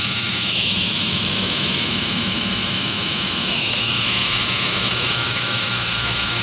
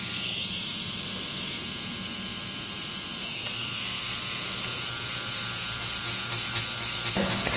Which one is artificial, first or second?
first